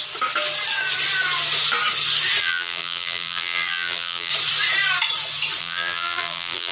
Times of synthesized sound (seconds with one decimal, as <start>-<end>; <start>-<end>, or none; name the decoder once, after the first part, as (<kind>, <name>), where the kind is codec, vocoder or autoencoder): 2.4-4.3 (vocoder, BigVGAN v2); 5.6-6.7